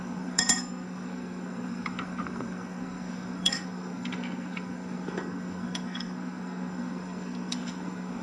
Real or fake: fake